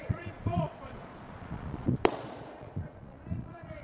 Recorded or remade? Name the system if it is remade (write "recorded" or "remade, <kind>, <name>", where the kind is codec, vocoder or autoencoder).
remade, vocoder, Vocos